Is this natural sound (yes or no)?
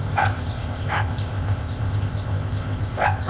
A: no